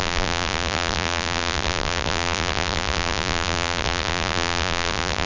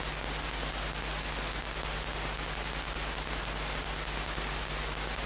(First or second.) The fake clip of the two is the first